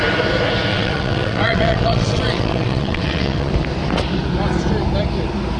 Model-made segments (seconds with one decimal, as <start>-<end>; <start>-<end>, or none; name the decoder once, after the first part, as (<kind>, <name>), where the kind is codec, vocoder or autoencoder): 0.7-3.5 (vocoder, WaveNeXt)